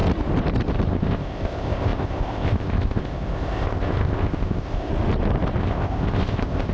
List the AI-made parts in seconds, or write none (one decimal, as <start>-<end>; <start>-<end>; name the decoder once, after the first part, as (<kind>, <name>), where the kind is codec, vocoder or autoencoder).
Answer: 0.9-4.9 (codec, ZipCodec); 5.6-6.7